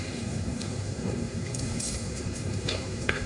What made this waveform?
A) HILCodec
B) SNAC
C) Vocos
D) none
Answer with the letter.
B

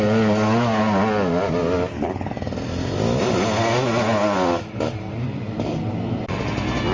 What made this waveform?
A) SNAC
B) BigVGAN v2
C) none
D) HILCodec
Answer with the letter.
C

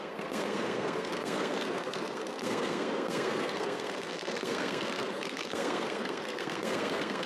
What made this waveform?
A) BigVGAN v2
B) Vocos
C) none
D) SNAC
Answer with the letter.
D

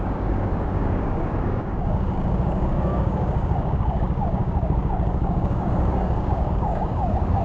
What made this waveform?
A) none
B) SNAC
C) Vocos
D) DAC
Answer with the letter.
D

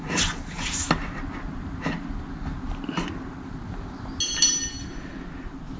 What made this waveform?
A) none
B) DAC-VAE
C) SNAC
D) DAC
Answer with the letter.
A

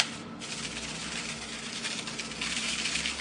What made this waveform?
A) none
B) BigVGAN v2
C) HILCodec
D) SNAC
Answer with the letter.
A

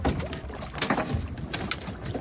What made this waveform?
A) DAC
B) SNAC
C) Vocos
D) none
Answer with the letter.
D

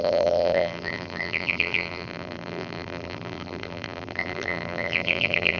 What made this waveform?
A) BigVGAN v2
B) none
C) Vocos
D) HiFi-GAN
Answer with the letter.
A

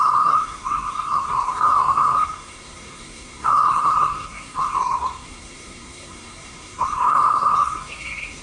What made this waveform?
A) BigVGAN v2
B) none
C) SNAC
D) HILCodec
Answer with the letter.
C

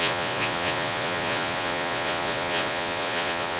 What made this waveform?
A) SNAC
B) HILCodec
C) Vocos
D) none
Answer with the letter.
C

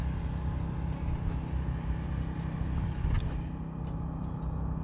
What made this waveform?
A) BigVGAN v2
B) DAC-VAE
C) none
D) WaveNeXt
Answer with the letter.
C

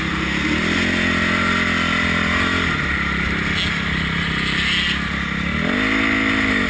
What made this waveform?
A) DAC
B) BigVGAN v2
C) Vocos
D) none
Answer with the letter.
D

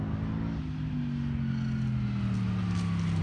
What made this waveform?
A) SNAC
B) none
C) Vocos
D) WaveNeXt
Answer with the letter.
B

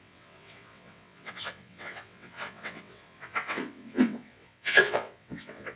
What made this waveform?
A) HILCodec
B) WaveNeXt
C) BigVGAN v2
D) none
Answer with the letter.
B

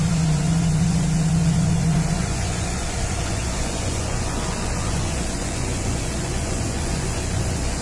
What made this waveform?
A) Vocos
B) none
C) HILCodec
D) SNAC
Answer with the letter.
A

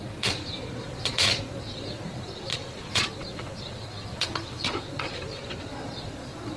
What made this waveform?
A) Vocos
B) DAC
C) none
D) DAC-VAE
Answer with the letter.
A